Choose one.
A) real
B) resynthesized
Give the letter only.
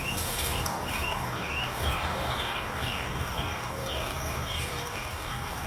B